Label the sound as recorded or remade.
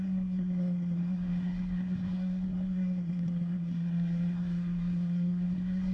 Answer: remade